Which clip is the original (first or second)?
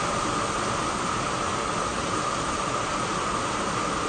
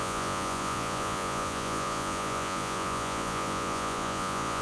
first